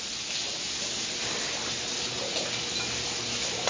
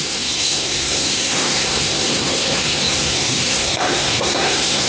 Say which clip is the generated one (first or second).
second